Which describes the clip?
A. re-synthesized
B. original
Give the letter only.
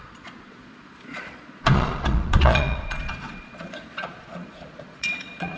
A